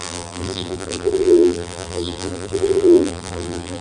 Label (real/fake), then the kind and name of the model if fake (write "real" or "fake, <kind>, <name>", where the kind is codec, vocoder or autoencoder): fake, vocoder, BigVGAN v2